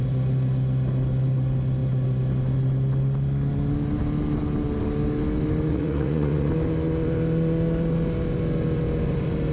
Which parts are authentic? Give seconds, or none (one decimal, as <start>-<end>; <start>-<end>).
0.0-5.7; 6.5-9.5